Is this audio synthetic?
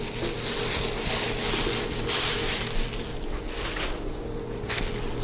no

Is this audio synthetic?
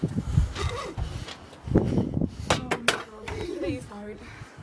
no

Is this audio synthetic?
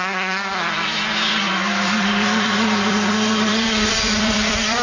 yes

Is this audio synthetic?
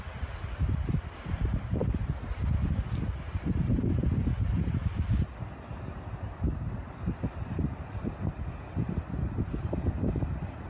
no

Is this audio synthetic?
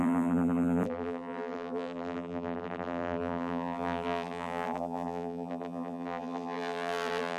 yes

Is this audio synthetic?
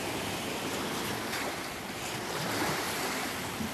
no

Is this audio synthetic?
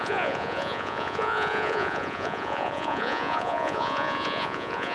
yes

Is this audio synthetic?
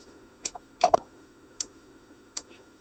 yes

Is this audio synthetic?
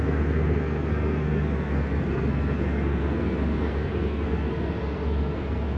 yes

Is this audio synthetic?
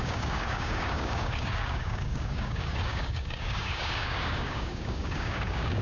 yes